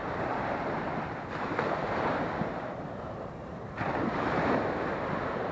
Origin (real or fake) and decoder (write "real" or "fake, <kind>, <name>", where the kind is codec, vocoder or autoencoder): fake, vocoder, BigVGAN v2